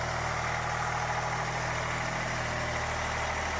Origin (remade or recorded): recorded